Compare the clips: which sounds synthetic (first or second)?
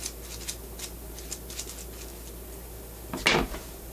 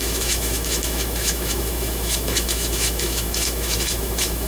second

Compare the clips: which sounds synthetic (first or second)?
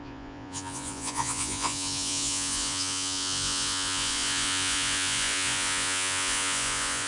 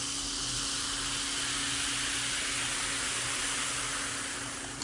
first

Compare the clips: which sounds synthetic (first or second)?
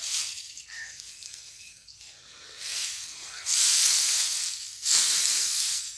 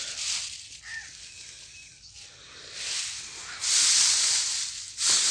first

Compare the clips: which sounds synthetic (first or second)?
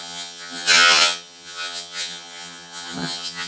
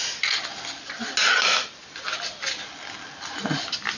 first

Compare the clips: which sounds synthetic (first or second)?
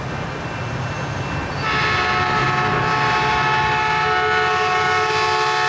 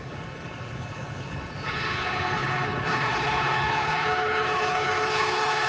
second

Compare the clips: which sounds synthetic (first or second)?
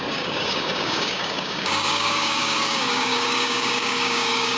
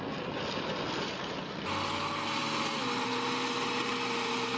first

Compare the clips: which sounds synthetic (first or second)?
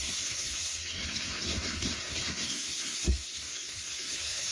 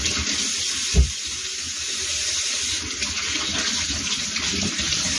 first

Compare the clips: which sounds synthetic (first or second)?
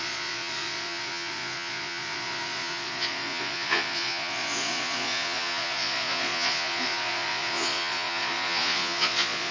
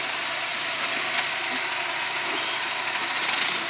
first